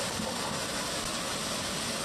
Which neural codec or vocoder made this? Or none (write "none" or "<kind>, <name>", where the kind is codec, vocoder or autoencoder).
none